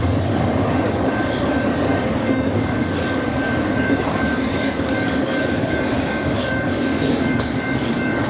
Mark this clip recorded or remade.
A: remade